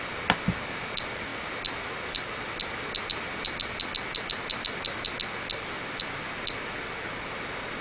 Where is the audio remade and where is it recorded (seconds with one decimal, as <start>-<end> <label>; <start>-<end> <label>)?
0.0-7.8 recorded

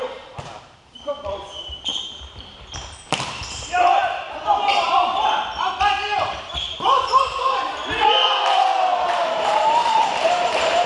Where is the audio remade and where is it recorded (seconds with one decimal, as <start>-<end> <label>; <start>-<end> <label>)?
0.0-5.0 remade; 5.0-6.3 recorded; 6.3-10.9 remade

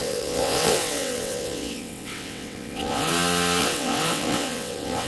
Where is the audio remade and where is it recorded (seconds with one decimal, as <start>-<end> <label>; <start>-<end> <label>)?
0.0-3.1 remade; 3.1-3.6 recorded; 3.6-5.1 remade

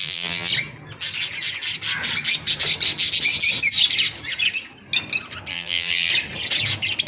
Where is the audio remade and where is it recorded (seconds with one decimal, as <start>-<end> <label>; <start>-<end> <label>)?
0.0-0.5 remade; 0.5-5.5 recorded; 5.5-6.1 remade; 6.1-7.1 recorded

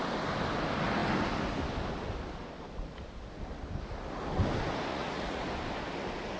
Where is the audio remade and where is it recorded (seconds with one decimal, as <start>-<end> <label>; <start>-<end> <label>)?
0.0-4.9 recorded; 4.9-5.4 remade; 5.4-6.4 recorded